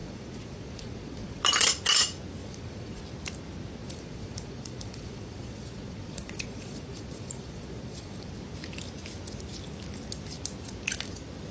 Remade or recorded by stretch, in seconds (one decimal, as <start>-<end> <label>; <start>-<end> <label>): 0.0-1.4 remade; 1.4-2.4 recorded; 2.4-3.0 remade; 3.0-3.8 recorded; 3.8-8.3 remade; 8.3-11.5 recorded